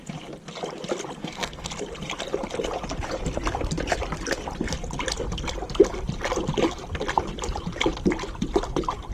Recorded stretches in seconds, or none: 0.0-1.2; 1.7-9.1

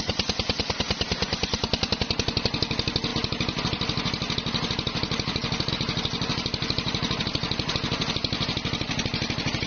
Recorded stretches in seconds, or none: 0.0-9.7

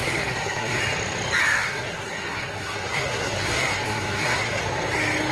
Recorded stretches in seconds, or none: 0.8-1.4; 4.6-5.3